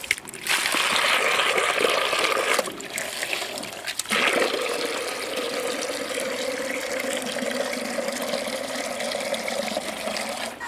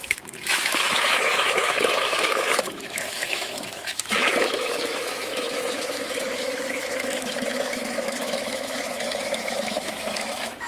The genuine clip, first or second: first